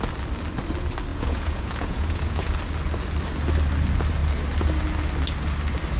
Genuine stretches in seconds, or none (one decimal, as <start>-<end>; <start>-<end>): 0.0-1.1; 2.5-6.0